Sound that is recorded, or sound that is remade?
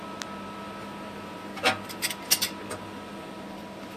recorded